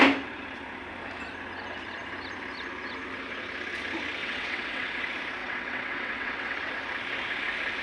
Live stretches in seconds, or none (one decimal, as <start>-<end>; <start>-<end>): 0.0-4.2; 5.0-5.4; 6.7-7.8